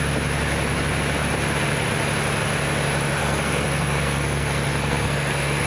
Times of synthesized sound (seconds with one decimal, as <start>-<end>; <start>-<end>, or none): 3.2-5.7